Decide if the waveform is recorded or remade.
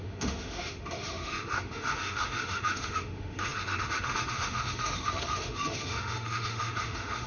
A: remade